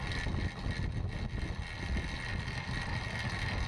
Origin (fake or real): real